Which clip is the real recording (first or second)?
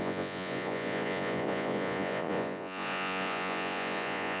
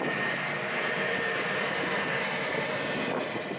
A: second